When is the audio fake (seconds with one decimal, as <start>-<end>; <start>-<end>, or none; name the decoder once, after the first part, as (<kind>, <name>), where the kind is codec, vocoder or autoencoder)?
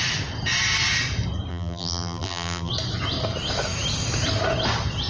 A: 1.5-2.7 (vocoder, BigVGAN v2)